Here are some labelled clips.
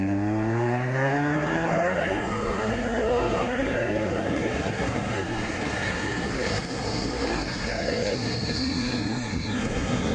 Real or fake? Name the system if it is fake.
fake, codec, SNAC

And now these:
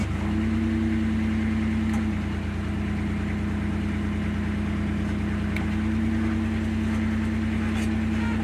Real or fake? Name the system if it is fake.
real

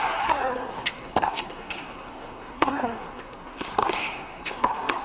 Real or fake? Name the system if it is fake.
fake, codec, SNAC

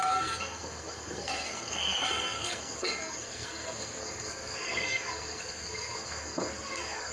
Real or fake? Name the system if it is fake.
fake, codec, SNAC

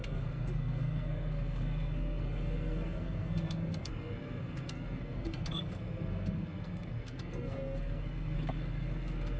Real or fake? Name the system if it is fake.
fake, codec, SNAC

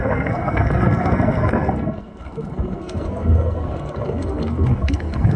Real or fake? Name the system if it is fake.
fake, codec, SNAC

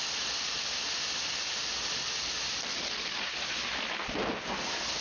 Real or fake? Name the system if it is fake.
real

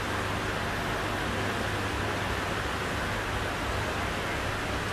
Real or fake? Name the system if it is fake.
real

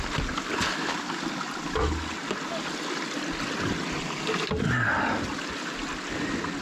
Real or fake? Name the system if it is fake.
real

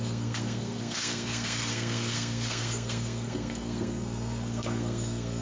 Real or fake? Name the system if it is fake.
fake, codec, SNAC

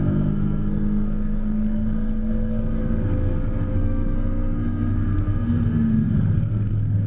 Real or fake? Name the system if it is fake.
fake, codec, SNAC